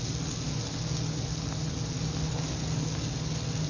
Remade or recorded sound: recorded